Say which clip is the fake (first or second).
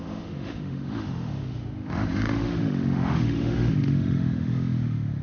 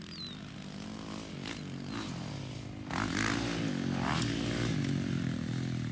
first